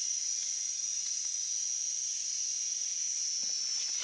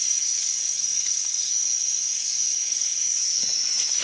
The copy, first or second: second